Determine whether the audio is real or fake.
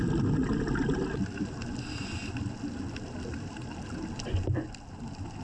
real